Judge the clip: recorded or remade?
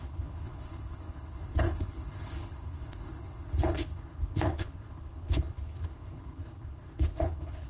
remade